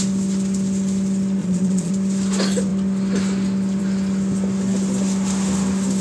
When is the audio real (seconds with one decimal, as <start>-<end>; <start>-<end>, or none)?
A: 0.0-1.4; 1.9-6.0